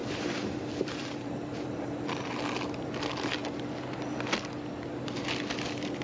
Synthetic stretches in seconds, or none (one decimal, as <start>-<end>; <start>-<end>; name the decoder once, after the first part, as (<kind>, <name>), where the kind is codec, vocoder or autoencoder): 0.0-2.1 (vocoder, BigVGAN v2)